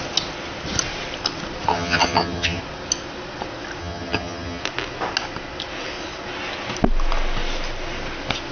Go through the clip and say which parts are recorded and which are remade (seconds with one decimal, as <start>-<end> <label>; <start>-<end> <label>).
0.0-1.7 recorded; 1.7-2.6 remade; 2.6-3.8 recorded; 3.8-4.6 remade; 4.6-8.5 recorded